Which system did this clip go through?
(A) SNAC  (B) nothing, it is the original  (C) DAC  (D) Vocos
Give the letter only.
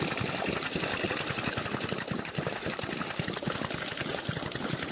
B